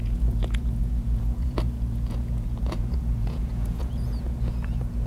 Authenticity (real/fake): fake